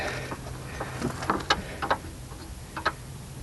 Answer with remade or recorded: recorded